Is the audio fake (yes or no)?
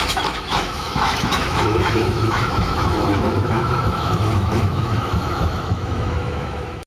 yes